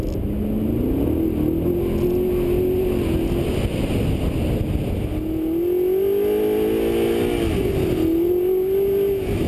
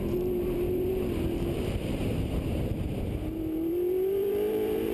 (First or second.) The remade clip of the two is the second